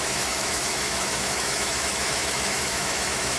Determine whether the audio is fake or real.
fake